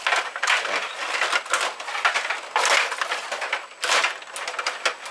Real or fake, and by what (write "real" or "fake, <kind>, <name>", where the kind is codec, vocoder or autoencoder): real